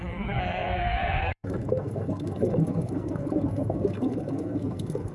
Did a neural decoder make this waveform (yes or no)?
yes